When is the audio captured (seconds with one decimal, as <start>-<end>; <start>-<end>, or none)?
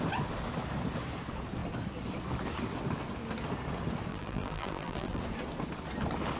0.0-4.1; 5.2-6.4